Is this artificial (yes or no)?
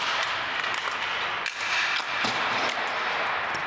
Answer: no